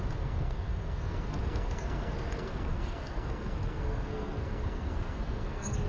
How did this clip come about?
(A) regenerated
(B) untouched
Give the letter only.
A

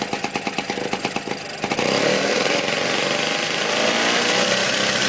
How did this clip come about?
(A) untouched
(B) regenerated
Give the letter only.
A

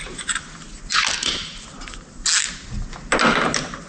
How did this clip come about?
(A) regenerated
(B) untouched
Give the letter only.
B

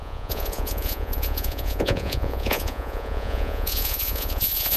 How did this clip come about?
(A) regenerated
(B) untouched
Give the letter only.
A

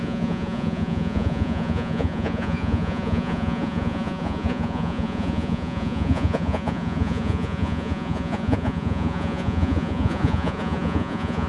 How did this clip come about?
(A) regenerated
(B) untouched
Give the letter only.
A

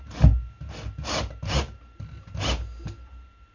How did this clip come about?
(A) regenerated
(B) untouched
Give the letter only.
A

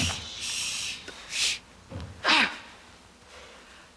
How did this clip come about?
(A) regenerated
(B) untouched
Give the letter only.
B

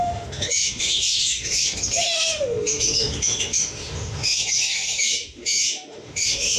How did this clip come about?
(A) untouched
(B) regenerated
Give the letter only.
B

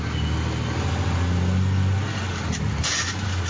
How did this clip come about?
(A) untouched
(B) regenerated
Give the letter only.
A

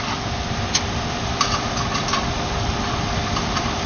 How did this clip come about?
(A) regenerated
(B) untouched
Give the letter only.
A